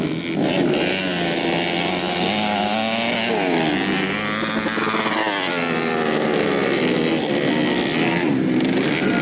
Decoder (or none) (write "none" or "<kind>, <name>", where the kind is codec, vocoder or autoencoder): none